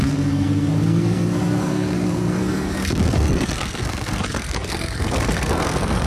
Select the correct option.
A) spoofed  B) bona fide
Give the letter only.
A